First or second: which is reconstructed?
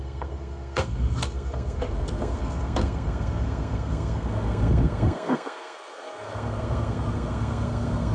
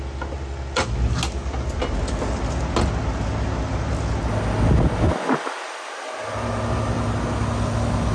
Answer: first